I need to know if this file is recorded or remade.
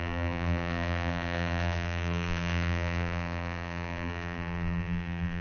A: remade